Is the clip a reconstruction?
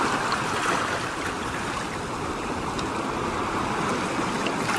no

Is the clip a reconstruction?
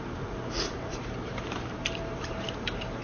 yes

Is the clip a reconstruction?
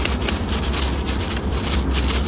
no